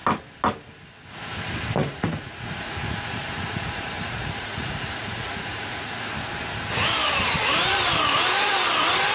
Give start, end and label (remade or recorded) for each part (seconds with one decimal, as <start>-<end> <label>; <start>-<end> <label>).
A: 0.0-1.8 recorded; 1.8-6.0 remade; 6.0-9.1 recorded